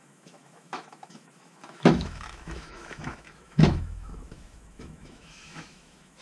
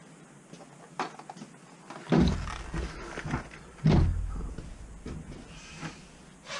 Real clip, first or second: second